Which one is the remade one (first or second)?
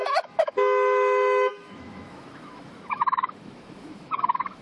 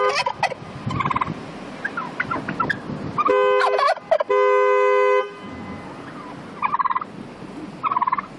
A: first